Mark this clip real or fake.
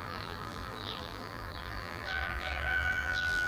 fake